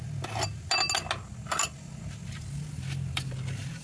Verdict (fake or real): real